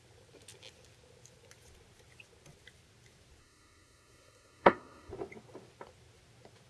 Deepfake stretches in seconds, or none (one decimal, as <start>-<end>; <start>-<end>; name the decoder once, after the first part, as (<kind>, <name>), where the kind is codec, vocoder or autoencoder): 3.4-5.1 (codec, SNAC)